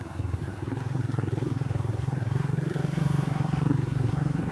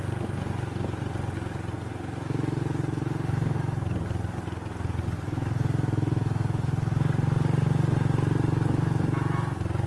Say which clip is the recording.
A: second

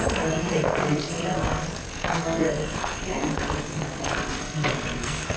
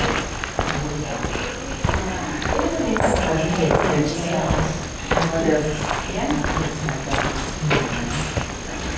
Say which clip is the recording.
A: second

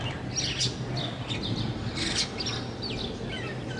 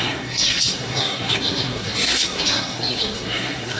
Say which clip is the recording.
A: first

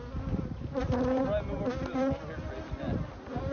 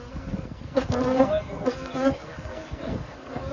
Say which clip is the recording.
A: first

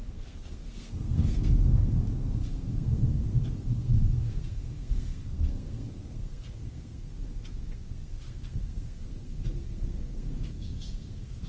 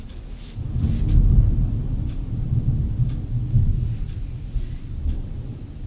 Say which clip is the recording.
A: second